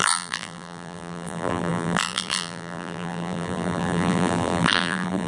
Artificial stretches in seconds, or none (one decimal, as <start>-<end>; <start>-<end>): 0.0-5.3

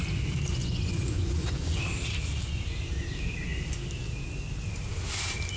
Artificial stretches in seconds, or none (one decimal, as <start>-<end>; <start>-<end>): 0.6-1.8

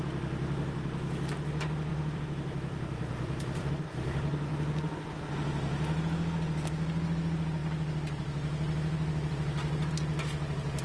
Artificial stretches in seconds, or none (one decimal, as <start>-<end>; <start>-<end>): 1.9-3.7; 7.6-9.9

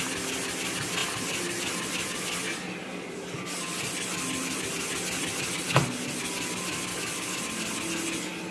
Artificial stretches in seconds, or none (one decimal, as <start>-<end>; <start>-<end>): 6.9-7.4

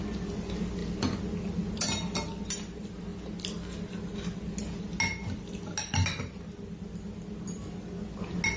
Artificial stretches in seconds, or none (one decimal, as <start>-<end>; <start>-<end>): none

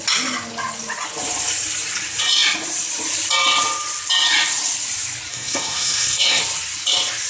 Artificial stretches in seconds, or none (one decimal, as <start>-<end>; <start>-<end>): 5.3-6.4